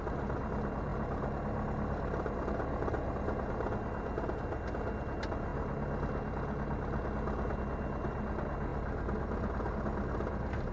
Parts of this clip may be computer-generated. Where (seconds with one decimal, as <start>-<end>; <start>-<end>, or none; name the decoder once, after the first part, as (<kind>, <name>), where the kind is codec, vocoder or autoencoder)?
none